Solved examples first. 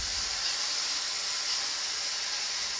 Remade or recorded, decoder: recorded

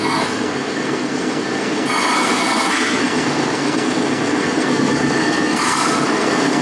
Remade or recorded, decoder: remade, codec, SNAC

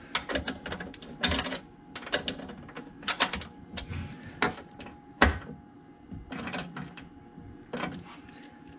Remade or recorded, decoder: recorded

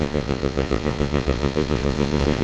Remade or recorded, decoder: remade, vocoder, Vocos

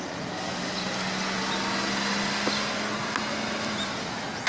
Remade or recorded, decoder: recorded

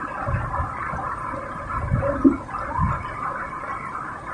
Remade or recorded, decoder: recorded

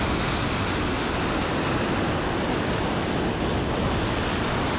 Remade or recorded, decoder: recorded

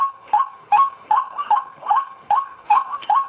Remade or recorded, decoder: remade, autoencoder, DAC-VAE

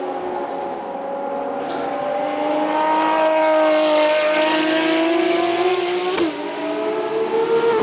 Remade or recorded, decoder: recorded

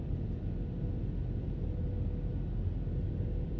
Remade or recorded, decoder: recorded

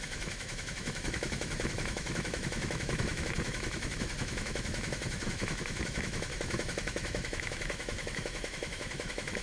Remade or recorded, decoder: remade, autoencoder, DAC-VAE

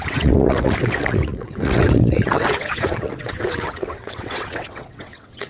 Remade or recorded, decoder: remade, vocoder, WaveNeXt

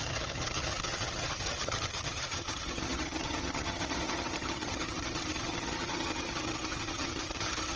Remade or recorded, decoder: remade, vocoder, HiFi-GAN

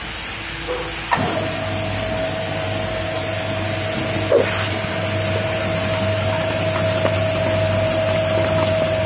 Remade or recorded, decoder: recorded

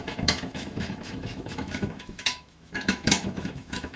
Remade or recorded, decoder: remade, autoencoder, DAC-VAE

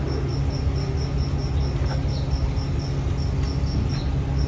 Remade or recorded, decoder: recorded